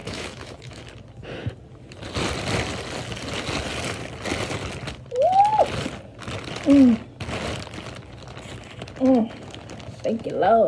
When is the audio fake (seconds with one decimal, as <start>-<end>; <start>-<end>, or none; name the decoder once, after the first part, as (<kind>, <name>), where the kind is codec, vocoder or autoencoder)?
0.0-0.8 (autoencoder, DAC-VAE)